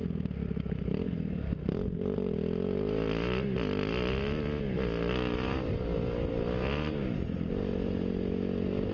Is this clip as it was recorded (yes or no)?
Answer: yes